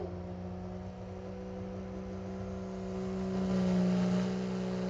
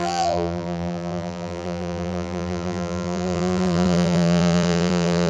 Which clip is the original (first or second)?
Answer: first